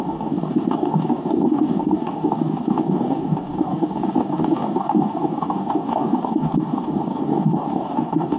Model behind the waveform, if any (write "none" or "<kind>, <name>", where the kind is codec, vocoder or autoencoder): codec, DAC